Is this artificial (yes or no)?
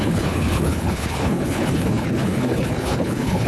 yes